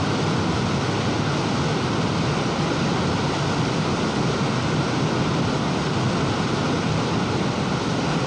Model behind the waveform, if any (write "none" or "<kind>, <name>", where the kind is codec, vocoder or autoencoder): none